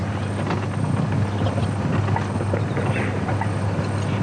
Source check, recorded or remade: recorded